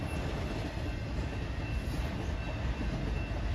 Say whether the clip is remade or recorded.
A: recorded